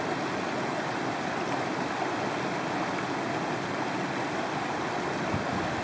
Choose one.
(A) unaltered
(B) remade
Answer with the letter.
A